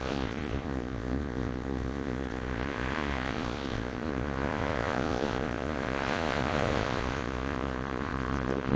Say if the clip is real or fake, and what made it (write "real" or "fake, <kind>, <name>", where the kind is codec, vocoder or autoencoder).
fake, vocoder, Vocos